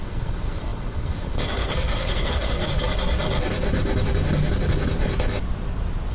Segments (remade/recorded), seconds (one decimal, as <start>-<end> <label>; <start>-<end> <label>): 0.0-2.7 remade; 2.7-6.1 recorded